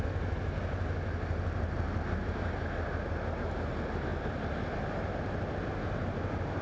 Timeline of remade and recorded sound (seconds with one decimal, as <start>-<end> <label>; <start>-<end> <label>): 0.0-4.1 recorded; 4.1-6.6 remade